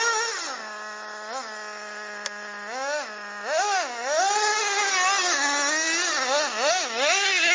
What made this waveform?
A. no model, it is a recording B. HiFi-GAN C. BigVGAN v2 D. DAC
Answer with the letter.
A